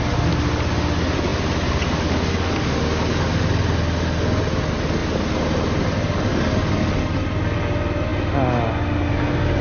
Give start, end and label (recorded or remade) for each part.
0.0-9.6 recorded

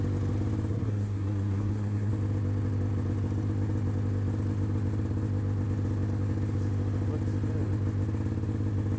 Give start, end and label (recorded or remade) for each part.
0.0-0.7 recorded; 0.7-2.1 remade; 2.1-9.0 recorded

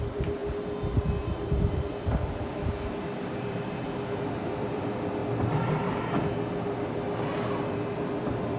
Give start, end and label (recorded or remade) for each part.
0.0-0.4 remade; 0.4-1.3 recorded; 1.3-5.2 remade; 5.2-7.6 recorded; 7.6-8.6 remade

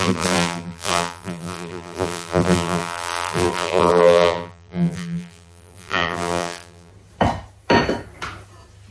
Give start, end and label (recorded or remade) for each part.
0.0-6.9 remade; 6.9-8.9 recorded